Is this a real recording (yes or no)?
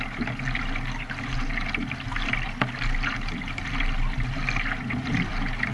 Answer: yes